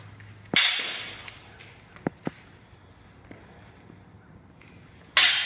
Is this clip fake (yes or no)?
no